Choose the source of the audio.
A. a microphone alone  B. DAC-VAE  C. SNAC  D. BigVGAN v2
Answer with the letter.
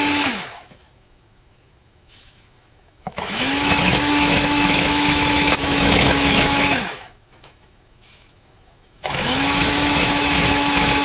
B